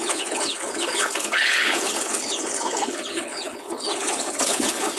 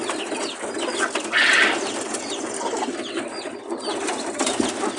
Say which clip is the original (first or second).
second